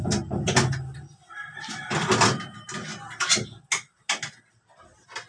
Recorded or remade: recorded